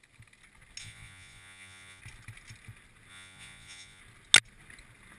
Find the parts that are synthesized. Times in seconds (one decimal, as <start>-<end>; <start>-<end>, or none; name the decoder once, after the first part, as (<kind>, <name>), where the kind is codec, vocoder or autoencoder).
0.8-2.0 (vocoder, Vocos); 3.1-4.0